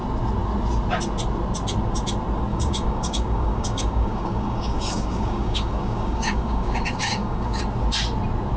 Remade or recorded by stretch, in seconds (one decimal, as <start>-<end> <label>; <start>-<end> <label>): 0.0-2.5 recorded; 2.5-7.6 remade; 7.6-8.6 recorded